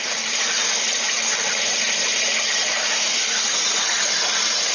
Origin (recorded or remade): recorded